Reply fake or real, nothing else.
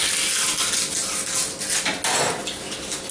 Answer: real